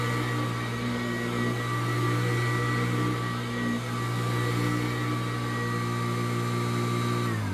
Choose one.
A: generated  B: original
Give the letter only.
B